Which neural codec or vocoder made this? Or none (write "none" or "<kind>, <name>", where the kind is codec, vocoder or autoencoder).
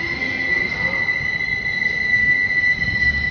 none